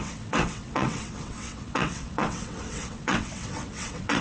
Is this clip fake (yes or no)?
yes